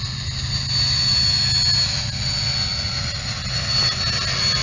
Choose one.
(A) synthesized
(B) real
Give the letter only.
B